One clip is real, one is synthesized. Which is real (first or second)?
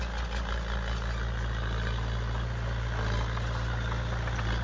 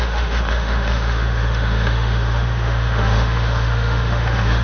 first